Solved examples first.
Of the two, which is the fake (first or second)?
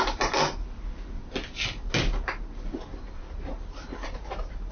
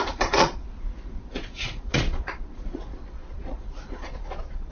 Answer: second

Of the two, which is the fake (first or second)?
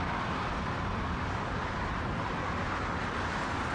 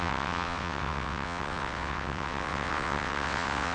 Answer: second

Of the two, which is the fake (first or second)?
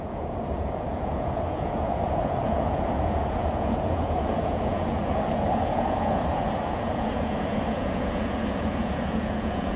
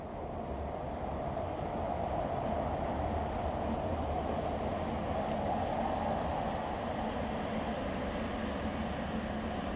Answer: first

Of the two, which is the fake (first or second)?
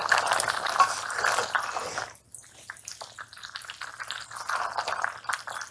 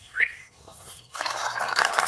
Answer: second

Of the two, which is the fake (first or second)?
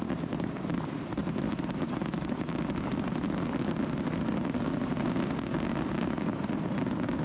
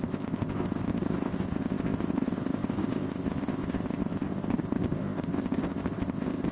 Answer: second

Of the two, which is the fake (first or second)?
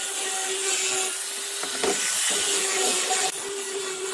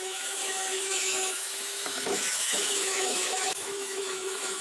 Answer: second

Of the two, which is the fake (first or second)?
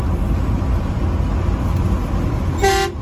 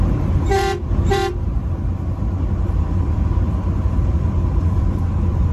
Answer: second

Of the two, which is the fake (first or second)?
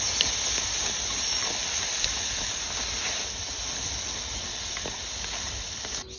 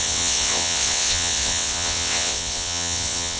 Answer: second